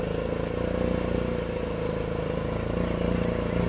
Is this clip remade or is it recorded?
recorded